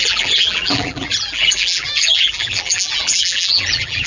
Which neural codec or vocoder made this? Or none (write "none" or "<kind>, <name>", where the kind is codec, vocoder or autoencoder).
vocoder, BigVGAN v2